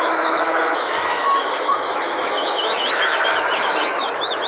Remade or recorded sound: remade